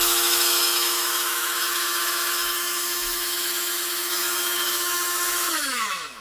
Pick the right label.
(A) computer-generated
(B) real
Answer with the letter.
A